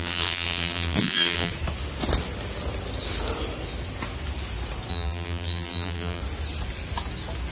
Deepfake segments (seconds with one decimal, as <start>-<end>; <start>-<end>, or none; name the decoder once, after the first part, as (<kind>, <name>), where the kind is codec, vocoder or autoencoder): 0.0-1.5 (vocoder, BigVGAN v2); 4.9-6.2